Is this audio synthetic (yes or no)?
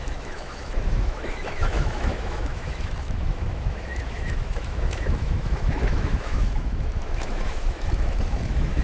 yes